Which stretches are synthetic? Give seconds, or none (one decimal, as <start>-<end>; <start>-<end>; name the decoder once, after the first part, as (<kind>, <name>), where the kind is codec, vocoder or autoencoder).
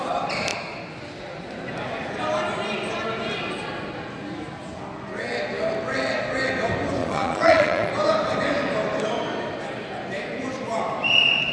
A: 7.0-7.9 (vocoder, Vocos)